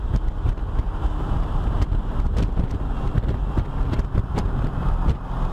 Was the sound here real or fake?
fake